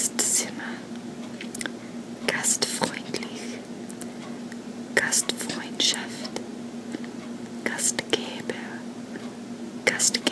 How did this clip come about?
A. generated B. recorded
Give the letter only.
B